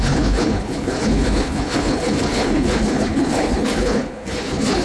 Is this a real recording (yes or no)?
no